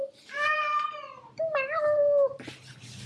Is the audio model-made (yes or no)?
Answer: yes